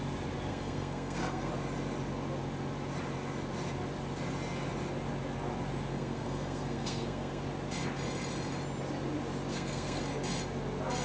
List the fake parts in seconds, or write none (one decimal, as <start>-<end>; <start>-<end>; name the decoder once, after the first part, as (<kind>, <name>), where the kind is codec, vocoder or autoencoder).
0.5-1.5 (codec, SNAC); 5.9-7.4; 9.5-10.0

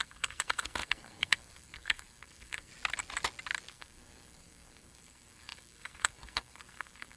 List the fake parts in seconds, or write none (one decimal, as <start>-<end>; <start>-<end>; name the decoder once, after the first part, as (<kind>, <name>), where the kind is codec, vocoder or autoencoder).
0.0-2.7 (codec, SNAC); 3.7-7.2

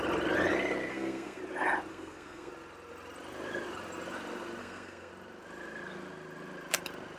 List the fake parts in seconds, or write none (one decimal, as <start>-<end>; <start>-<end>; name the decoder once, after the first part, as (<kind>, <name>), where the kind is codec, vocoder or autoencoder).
0.9-1.4 (codec, SNAC); 1.9-2.5; 4.6-5.1

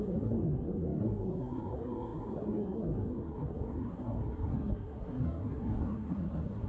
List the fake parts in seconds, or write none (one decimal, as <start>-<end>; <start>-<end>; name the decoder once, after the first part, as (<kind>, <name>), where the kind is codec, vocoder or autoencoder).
0.0-6.7 (codec, SNAC)

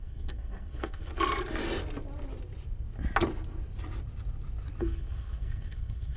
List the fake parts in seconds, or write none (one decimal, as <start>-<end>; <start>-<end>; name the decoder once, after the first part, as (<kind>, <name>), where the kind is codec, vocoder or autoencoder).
0.0-1.1 (codec, SNAC); 4.8-6.2

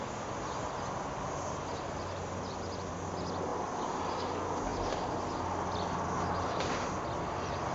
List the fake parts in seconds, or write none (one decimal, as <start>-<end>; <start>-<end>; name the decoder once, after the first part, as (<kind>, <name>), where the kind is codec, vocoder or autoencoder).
none

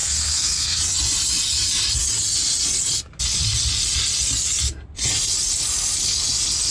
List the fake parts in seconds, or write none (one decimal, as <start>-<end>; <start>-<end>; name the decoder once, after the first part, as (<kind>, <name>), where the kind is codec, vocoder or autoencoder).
0.0-0.8 (codec, SNAC)